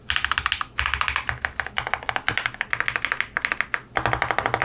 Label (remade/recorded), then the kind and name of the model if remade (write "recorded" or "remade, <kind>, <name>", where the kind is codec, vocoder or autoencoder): recorded